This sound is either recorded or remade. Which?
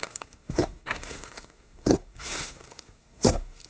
remade